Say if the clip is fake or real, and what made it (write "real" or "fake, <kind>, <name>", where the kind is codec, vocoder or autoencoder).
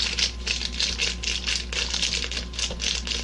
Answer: real